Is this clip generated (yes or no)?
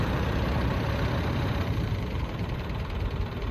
yes